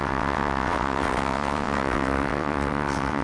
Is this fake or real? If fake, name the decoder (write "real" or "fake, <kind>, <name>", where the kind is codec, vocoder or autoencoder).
fake, vocoder, WaveNeXt